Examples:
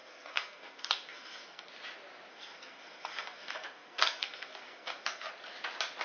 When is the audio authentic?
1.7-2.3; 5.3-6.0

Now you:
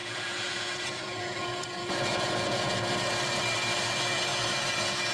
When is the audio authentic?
2.9-5.1

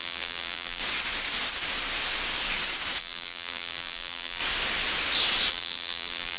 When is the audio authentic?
0.8-3.0; 4.4-5.5